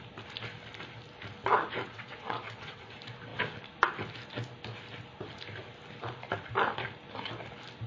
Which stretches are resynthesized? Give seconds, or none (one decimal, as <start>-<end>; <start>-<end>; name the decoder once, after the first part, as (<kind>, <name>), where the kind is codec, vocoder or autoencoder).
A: 1.8-2.9 (vocoder, WaveNeXt)